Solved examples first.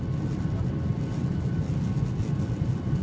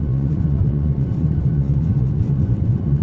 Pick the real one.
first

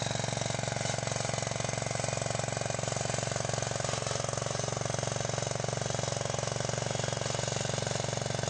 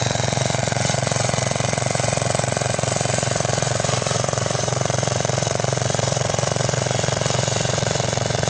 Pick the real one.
first